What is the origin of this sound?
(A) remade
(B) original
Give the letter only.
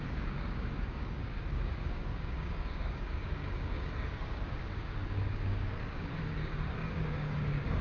A